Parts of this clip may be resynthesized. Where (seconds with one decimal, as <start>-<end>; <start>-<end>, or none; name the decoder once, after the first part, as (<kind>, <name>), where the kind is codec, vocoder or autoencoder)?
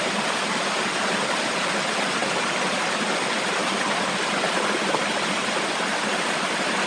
none